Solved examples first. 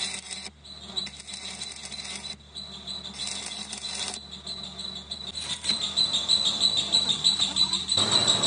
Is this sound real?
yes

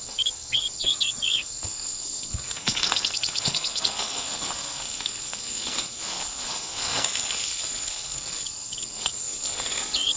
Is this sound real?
no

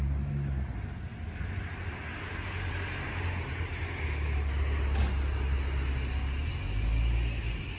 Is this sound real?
yes